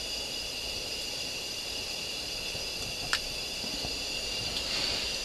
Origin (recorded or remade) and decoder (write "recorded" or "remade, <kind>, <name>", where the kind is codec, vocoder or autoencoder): recorded